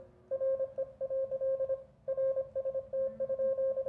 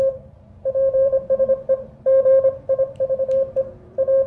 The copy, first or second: second